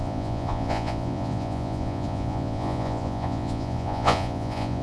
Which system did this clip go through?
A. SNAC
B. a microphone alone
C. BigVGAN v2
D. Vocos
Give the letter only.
D